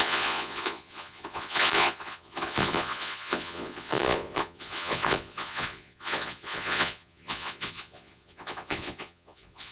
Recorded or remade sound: remade